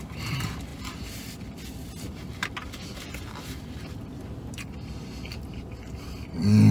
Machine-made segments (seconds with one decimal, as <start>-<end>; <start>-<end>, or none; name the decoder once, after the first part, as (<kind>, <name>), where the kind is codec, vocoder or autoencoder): 0.7-4.7 (vocoder, BigVGAN v2)